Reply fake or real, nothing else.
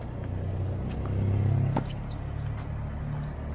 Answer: real